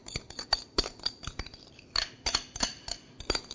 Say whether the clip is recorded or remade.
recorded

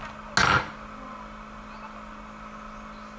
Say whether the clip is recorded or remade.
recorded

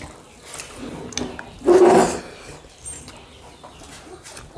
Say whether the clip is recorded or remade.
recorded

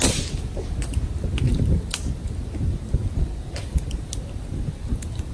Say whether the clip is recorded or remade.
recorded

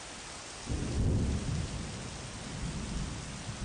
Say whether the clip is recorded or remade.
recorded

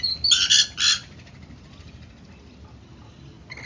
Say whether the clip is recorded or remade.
recorded